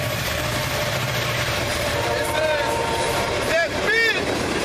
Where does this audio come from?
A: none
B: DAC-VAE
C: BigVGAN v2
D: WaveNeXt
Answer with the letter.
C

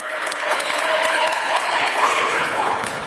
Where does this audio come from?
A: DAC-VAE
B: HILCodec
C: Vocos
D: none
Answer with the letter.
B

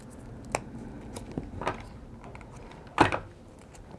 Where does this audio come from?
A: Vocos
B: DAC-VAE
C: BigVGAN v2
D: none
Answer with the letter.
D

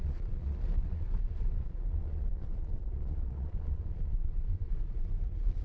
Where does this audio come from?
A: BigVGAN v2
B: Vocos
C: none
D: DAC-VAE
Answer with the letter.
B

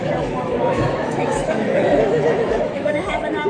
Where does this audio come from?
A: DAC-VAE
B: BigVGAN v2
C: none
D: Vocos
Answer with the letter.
A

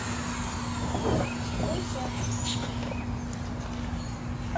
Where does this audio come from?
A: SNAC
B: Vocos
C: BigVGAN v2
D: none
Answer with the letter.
D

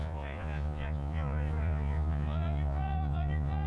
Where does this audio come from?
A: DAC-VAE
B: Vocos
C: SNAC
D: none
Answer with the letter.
B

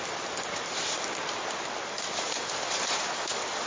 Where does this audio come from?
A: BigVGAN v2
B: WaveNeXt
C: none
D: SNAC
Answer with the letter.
A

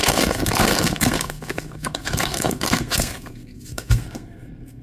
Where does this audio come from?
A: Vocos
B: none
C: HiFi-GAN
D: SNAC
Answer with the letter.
D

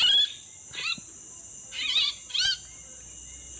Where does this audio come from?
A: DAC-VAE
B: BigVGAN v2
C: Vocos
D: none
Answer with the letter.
D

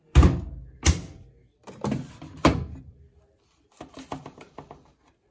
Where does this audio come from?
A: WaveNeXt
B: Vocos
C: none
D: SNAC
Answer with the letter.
C